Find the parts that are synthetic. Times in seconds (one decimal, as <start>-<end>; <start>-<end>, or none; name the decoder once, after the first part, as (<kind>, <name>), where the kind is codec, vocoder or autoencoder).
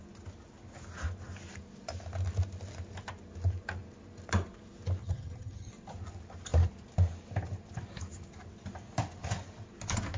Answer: 5.0-5.7 (vocoder, HiFi-GAN)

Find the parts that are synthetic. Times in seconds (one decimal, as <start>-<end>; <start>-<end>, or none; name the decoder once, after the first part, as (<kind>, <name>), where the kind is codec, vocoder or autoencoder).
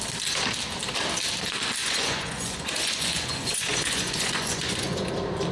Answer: 1.8-5.1 (vocoder, Vocos)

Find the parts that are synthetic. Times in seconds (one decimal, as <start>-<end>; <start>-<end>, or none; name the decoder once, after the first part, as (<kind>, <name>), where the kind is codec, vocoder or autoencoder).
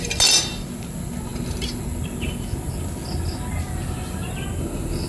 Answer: none